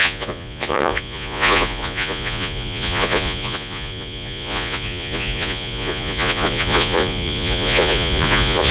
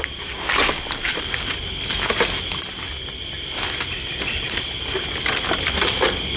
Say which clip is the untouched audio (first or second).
second